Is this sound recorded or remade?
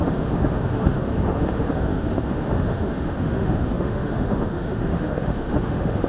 remade